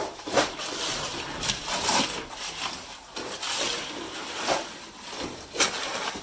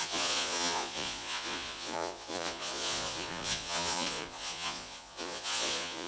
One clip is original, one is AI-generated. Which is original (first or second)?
first